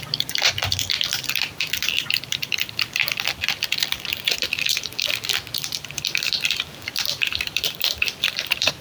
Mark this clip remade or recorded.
remade